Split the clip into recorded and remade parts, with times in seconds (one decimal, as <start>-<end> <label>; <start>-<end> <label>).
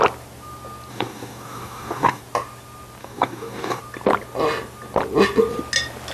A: 0.0-0.9 recorded; 0.9-2.2 remade; 2.2-3.0 recorded; 3.0-3.8 remade; 3.8-6.1 recorded